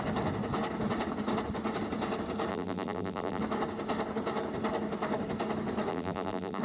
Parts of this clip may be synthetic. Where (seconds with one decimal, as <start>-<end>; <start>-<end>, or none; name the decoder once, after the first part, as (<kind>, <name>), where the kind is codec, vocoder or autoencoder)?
2.5-3.4 (vocoder, BigVGAN v2); 5.9-6.6